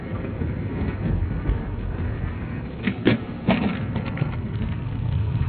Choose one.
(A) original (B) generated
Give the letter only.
B